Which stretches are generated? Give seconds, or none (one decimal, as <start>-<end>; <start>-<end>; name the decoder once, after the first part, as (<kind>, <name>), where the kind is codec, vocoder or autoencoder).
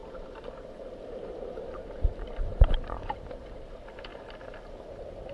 0.0-4.1 (vocoder, BigVGAN v2)